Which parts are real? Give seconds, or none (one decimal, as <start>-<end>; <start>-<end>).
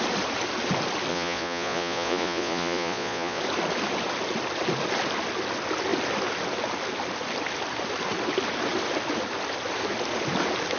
0.0-1.1; 3.4-10.8